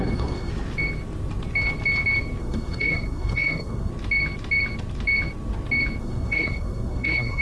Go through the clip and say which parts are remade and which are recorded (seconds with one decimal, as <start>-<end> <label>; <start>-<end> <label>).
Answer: 0.0-0.5 remade; 0.5-2.4 recorded; 2.4-3.9 remade; 3.9-6.0 recorded; 6.0-7.4 remade